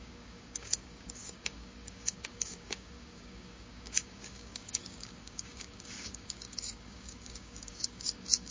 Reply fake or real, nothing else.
fake